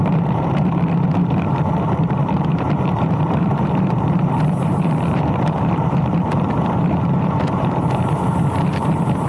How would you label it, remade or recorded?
remade